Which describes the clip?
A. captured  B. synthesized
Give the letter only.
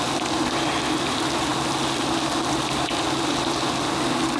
A